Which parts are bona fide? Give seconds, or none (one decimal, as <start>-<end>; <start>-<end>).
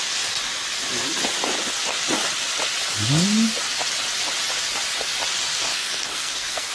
0.0-5.7